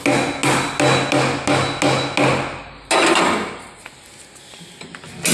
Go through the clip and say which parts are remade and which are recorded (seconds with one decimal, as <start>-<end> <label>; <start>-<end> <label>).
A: 0.0-5.3 recorded